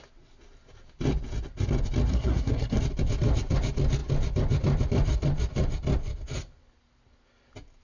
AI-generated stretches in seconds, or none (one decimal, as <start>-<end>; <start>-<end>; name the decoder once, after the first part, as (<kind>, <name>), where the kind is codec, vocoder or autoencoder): 2.1-2.8 (codec, SNAC)